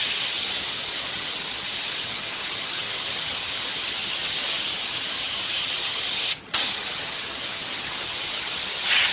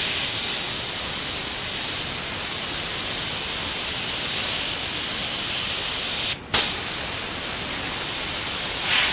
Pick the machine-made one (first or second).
first